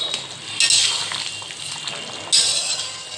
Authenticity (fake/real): real